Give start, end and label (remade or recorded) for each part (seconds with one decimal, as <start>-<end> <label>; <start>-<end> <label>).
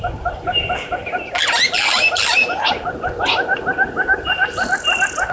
0.0-0.5 recorded; 0.5-1.4 remade; 1.4-1.9 recorded; 1.9-3.6 remade; 3.6-5.3 recorded